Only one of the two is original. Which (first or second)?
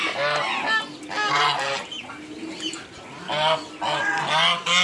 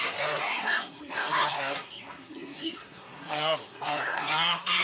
first